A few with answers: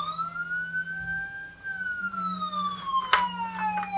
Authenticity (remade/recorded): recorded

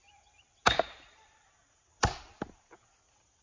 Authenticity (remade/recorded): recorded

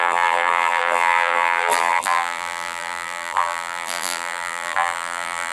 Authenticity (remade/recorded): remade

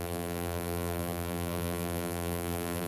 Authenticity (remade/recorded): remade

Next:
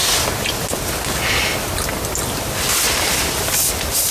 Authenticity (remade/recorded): recorded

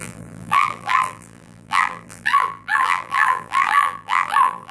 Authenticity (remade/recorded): remade